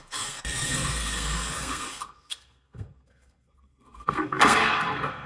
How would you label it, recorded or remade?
remade